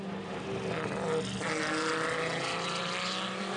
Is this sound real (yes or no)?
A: yes